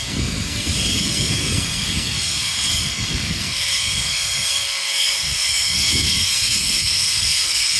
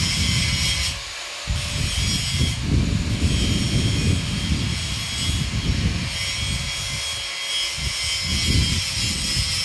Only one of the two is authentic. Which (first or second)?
second